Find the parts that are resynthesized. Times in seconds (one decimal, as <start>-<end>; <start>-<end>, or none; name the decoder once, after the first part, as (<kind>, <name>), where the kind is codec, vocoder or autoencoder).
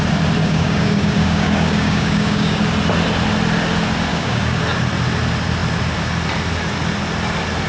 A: 0.4-2.6 (codec, DAC); 4.1-4.6